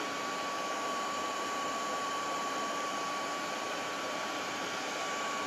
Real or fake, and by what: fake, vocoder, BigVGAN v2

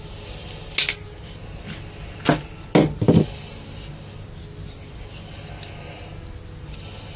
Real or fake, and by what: real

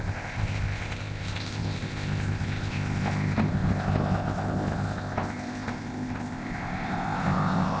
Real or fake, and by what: fake, codec, ZipCodec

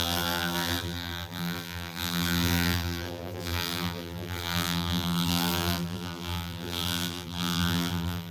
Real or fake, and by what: fake, vocoder, BigVGAN v2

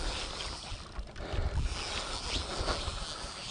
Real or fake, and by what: real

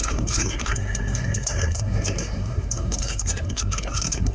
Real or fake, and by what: fake, codec, SNAC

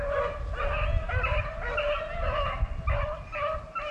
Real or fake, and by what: real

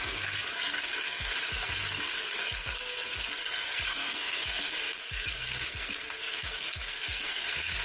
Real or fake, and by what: fake, codec, SNAC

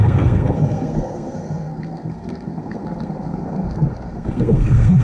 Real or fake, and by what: fake, codec, SNAC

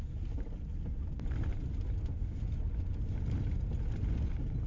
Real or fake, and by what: real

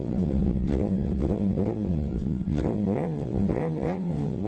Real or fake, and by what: fake, vocoder, WaveNeXt